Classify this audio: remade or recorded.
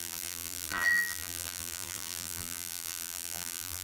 remade